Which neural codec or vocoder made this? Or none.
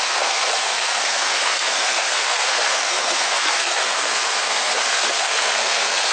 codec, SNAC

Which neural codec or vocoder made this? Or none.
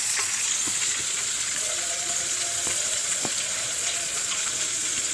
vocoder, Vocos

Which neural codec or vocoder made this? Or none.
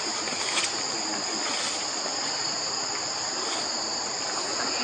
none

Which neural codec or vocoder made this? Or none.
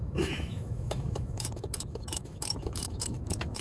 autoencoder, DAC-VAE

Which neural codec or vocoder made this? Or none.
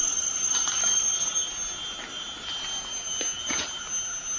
none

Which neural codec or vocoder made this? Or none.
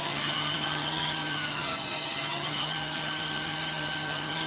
vocoder, HiFi-GAN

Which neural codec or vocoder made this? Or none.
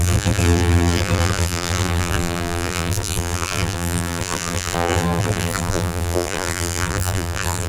vocoder, BigVGAN v2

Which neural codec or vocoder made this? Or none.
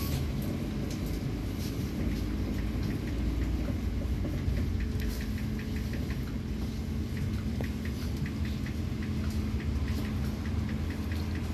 none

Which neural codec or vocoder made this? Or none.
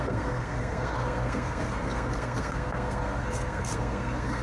codec, SNAC